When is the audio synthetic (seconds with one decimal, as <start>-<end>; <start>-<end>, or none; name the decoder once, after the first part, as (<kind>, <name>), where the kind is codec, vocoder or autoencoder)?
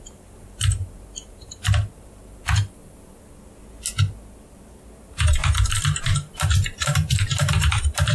0.0-2.8 (vocoder, BigVGAN v2); 5.0-8.1